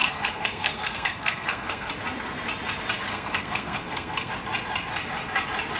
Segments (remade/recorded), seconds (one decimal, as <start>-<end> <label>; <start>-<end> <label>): 0.0-1.9 remade; 1.9-3.1 recorded; 3.1-4.3 remade; 4.3-5.8 recorded